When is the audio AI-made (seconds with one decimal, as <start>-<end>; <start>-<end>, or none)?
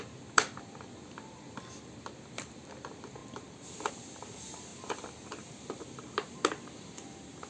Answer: 4.7-6.0